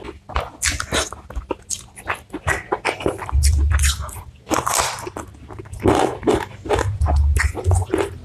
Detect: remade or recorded recorded